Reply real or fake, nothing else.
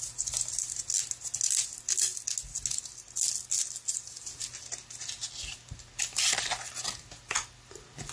real